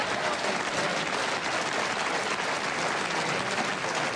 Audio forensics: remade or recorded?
recorded